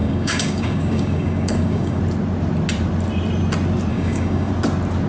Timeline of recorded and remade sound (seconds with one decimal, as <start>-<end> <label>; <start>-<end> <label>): 0.0-2.0 remade; 2.0-3.9 recorded; 3.9-4.5 remade; 4.5-5.1 recorded